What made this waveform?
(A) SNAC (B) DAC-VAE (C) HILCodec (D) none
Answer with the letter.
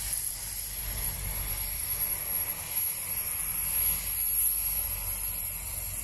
D